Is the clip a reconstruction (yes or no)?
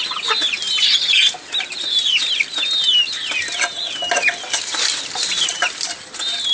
no